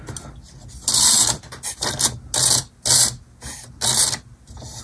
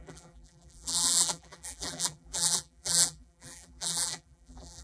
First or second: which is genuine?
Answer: first